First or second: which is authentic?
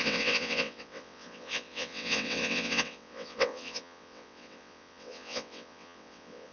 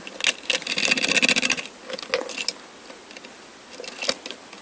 second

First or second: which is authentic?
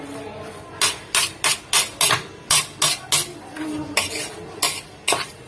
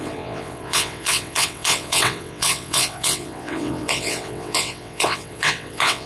first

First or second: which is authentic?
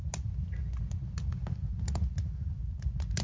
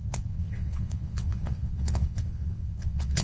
first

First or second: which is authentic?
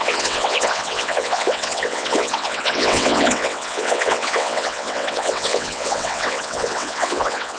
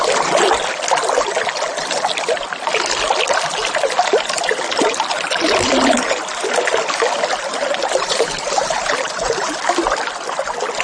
second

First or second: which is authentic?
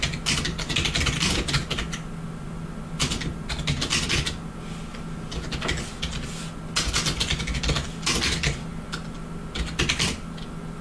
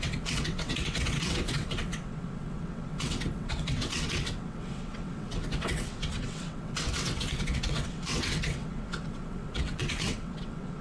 first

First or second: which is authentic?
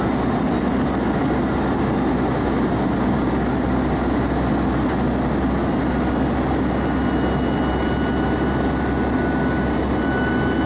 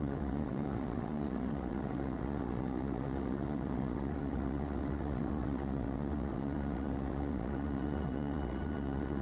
first